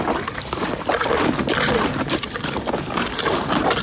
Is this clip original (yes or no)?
no